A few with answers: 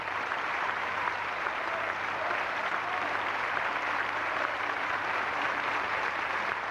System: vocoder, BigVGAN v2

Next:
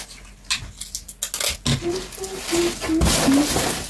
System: none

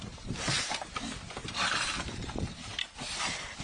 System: vocoder, BigVGAN v2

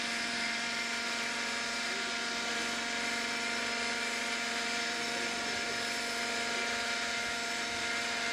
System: vocoder, BigVGAN v2